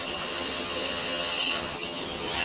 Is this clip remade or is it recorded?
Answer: remade